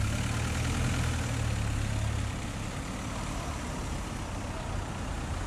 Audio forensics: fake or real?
real